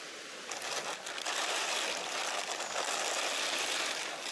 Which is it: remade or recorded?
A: recorded